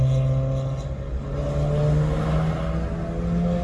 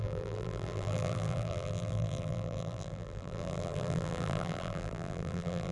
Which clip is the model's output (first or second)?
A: second